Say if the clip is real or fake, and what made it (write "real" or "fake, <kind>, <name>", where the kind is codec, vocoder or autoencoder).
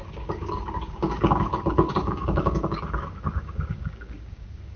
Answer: fake, codec, DAC